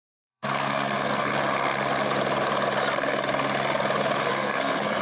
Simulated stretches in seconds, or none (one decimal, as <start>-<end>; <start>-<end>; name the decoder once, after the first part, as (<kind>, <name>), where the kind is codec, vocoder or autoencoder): 0.0-1.3 (codec, SNAC); 4.3-5.0